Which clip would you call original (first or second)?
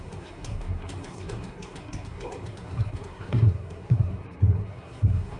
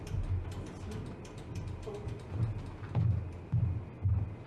second